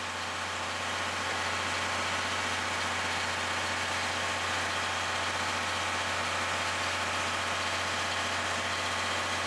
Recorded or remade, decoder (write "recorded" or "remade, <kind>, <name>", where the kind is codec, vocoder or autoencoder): recorded